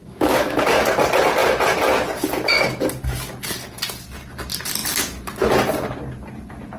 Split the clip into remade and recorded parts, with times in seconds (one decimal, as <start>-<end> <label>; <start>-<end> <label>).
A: 0.0-0.6 remade; 0.6-6.8 recorded